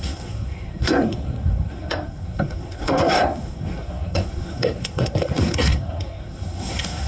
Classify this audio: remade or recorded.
remade